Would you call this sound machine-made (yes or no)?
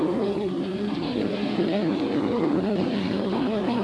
yes